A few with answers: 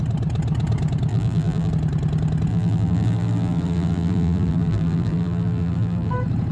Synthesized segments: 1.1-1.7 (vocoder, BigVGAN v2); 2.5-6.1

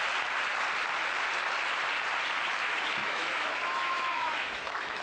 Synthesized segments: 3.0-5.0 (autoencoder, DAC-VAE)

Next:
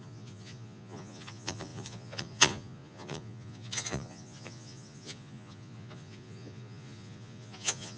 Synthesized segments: 0.0-8.0 (vocoder, Vocos)

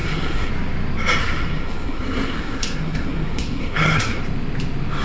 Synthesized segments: 0.0-0.5 (codec, SNAC); 1.2-4.2

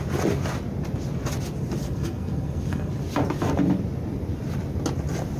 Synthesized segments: 1.8-2.9 (codec, SNAC)

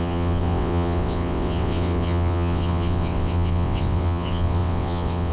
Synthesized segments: 0.0-5.3 (vocoder, WaveNeXt)